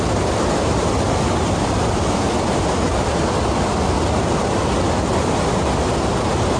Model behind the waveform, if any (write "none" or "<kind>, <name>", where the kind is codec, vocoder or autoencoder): none